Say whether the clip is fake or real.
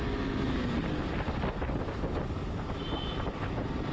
real